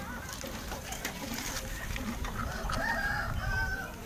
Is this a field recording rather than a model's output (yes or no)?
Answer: no